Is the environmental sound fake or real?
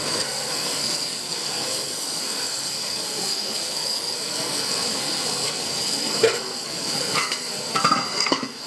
fake